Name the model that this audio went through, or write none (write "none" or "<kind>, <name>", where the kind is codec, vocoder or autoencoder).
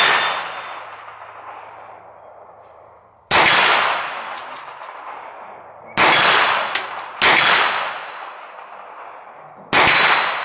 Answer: none